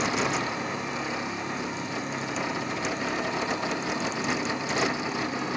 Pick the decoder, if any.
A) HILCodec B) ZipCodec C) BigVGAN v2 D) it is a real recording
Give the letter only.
D